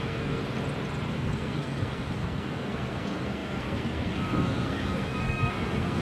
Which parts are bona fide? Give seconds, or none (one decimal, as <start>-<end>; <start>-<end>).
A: 0.4-1.1